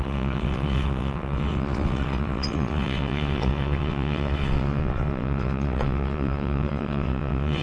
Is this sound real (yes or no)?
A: no